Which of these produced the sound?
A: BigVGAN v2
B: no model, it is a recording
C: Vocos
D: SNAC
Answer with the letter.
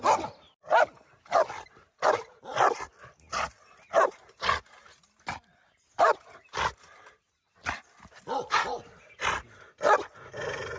B